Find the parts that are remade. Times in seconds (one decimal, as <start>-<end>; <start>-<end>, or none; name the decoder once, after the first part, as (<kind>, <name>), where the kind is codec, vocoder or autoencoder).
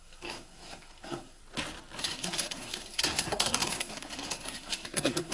0.0-1.4 (codec, SNAC); 2.0-5.3